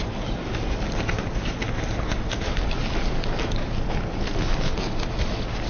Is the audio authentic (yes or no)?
yes